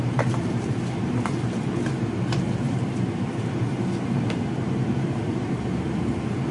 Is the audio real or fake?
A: fake